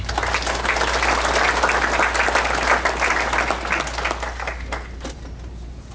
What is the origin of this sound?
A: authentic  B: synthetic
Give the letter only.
A